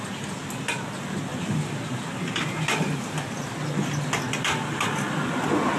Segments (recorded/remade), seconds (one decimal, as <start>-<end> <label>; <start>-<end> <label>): 0.0-5.8 recorded